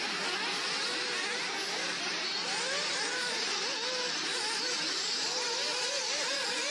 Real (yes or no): yes